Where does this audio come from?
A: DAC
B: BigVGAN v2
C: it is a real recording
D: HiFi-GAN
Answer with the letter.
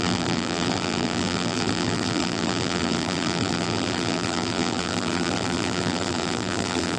B